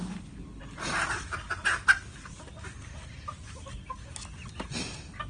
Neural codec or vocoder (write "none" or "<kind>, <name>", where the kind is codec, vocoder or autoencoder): none